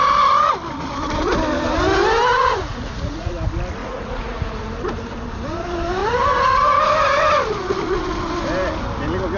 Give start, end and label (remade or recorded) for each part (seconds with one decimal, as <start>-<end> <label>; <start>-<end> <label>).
0.0-2.3 recorded; 2.3-3.3 remade; 3.3-3.8 recorded; 3.8-4.6 remade; 4.6-9.4 recorded